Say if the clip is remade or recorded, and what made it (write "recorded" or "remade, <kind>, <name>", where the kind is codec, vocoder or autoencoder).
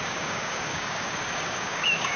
remade, codec, DAC